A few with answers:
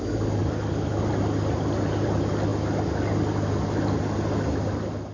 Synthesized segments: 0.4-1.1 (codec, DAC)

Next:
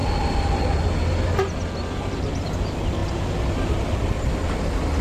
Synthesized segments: none